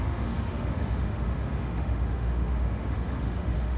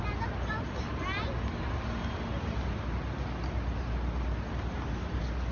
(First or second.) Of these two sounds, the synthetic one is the first